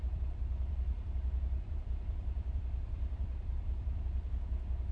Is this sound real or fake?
fake